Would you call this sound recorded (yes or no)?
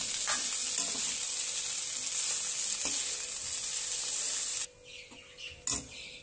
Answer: yes